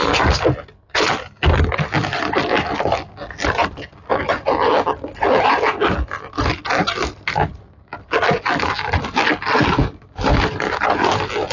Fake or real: real